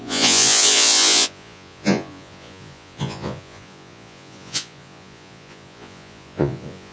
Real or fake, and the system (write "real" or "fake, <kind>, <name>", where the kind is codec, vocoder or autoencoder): fake, vocoder, Vocos